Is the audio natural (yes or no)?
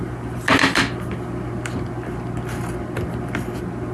yes